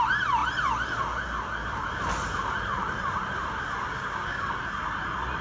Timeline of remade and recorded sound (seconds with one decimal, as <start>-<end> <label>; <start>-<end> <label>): 0.0-3.9 recorded; 3.9-4.6 remade; 4.6-5.4 recorded